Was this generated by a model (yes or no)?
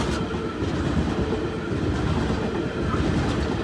no